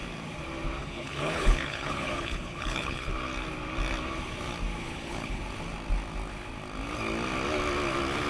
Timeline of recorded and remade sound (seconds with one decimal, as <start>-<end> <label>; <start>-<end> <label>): 0.0-0.8 recorded; 0.8-3.1 remade; 3.1-4.8 recorded; 4.8-5.4 remade; 5.4-8.3 recorded